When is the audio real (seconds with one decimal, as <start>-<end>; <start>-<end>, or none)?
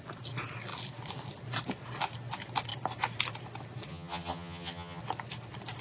0.0-3.9; 5.0-5.8